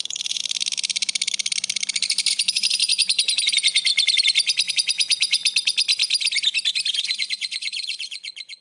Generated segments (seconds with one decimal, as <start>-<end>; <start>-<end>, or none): 0.0-0.4; 2.3-3.9; 4.7-5.4; 6.9-8.6